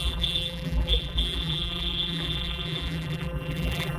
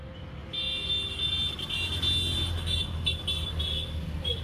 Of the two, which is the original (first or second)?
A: second